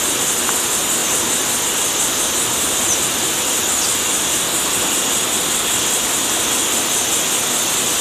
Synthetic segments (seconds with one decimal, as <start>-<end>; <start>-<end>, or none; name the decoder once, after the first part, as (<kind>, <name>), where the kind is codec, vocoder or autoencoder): none